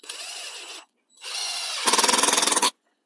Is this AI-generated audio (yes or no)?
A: yes